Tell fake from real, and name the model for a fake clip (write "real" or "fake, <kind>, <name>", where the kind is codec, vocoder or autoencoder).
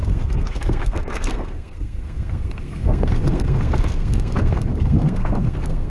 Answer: fake, codec, SNAC